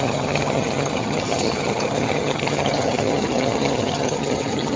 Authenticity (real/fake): fake